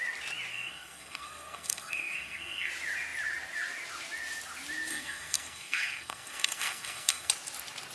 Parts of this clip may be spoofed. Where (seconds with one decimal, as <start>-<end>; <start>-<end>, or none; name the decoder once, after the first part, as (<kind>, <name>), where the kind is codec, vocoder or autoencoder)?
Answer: 0.5-2.7 (codec, SNAC); 4.9-7.3